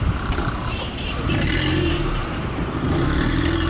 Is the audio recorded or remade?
remade